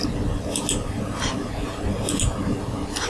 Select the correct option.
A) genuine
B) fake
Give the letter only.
A